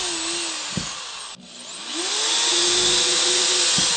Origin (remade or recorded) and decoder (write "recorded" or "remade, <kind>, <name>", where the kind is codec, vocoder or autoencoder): recorded